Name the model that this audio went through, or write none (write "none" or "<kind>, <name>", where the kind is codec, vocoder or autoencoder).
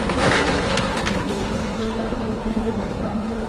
codec, SNAC